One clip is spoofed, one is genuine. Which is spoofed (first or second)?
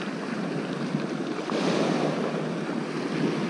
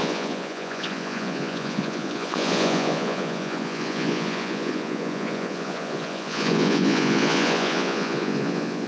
second